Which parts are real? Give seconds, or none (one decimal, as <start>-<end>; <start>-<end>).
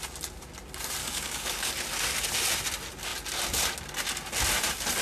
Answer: 0.0-1.0; 1.7-5.0